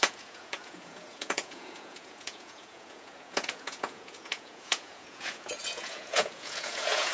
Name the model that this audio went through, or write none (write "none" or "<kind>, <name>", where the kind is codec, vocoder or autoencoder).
vocoder, Vocos